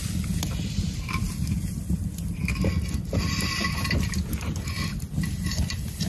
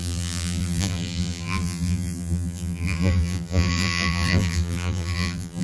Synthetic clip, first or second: second